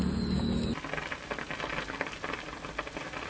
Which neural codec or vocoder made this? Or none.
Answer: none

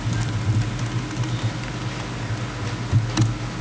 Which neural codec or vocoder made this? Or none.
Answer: none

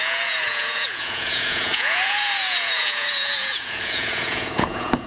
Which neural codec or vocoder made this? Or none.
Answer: vocoder, Vocos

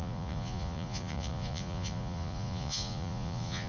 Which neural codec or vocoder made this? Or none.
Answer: vocoder, Vocos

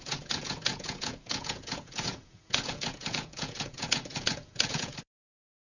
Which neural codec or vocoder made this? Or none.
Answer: vocoder, Vocos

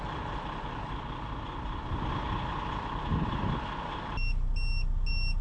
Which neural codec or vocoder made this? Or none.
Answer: none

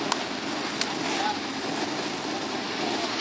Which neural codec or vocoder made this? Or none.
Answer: none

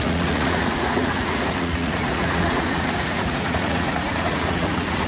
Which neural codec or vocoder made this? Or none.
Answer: vocoder, Vocos